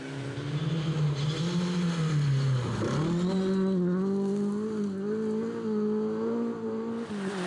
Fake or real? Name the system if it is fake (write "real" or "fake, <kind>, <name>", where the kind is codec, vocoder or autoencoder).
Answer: real